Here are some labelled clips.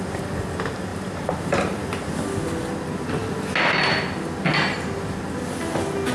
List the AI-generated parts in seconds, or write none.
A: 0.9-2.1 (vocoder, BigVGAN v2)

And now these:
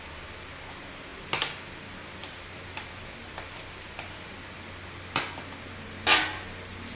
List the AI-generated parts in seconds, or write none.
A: 2.2-4.6 (vocoder, BigVGAN v2)

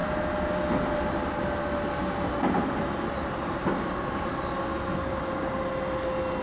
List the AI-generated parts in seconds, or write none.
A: none

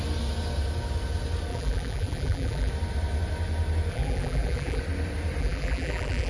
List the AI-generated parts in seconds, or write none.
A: 1.5-2.7 (vocoder, BigVGAN v2); 3.9-4.8; 5.4-6.3

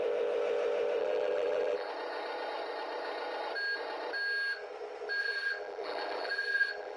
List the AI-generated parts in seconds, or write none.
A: 1.0-1.9 (vocoder, BigVGAN v2); 5.2-7.0